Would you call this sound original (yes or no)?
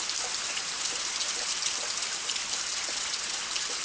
yes